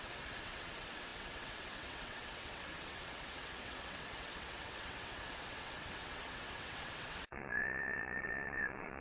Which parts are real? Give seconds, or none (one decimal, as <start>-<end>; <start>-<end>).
none